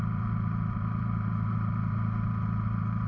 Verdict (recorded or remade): remade